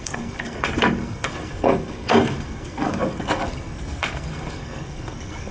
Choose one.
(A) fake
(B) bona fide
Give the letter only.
A